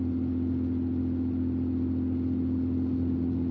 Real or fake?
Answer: real